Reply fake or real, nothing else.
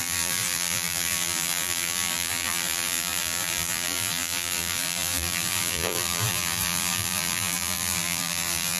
fake